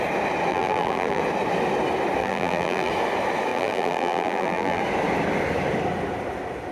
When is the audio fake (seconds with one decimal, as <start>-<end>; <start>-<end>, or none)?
0.5-1.2; 2.2-2.9; 3.5-4.8